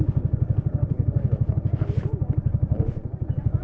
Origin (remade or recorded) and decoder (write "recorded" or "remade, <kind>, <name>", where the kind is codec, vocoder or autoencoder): recorded